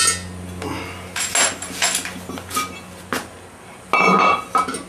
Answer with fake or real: real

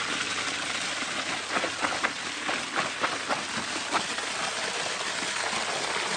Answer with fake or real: real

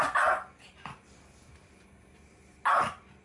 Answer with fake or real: real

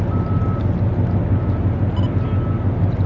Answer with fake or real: real